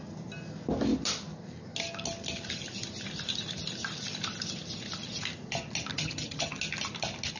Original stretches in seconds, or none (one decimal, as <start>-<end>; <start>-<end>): 0.0-5.9; 6.6-7.4